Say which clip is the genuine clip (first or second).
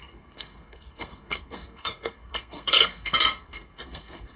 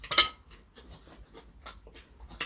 second